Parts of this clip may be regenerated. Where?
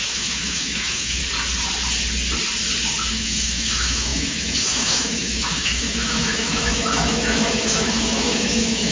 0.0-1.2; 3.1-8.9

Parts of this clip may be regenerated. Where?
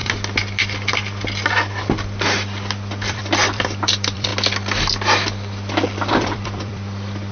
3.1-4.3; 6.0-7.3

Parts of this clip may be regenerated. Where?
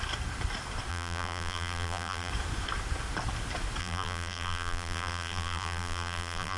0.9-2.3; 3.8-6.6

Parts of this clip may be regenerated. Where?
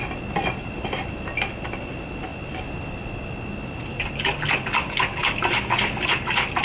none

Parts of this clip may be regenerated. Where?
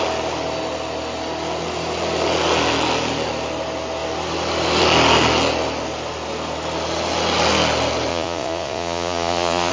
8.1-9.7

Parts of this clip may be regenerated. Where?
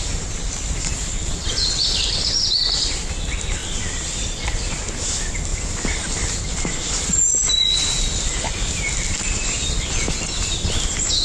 none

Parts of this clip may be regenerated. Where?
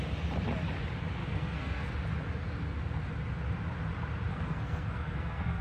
1.2-1.9; 4.3-5.6